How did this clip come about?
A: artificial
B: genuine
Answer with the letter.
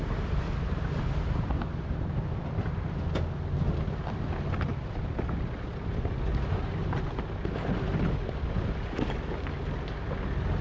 B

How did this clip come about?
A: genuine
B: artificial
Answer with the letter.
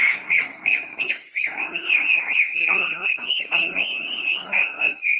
B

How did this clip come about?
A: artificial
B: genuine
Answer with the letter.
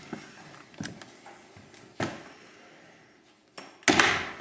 B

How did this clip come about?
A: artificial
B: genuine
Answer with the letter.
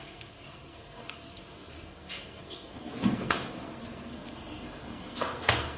A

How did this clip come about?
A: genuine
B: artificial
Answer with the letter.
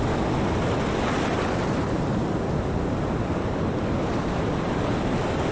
A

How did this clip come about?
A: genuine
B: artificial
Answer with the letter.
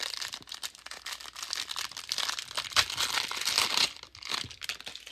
A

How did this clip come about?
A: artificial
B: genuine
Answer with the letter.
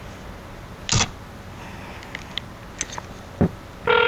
B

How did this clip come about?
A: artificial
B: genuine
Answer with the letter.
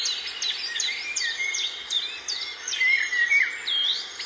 B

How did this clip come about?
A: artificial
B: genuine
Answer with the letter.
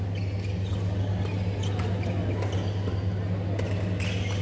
B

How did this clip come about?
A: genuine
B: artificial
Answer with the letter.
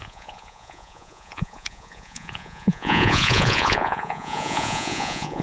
B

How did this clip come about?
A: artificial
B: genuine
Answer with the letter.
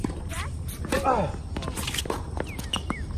B